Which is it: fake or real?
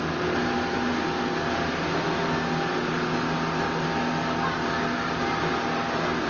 real